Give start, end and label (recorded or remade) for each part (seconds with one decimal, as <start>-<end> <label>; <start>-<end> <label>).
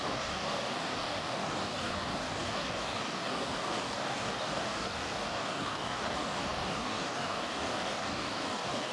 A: 0.0-8.9 remade